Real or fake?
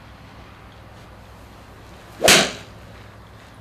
real